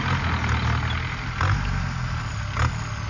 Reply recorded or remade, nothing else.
recorded